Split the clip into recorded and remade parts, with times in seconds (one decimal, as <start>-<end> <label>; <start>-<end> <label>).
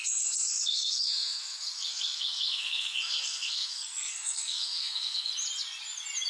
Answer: 0.0-5.3 remade; 5.3-6.3 recorded